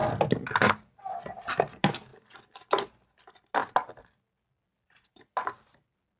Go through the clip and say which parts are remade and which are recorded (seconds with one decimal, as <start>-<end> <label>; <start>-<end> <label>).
0.0-6.2 recorded